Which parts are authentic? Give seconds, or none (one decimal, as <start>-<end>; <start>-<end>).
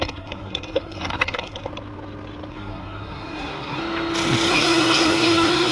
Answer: 1.7-2.5; 3.8-4.5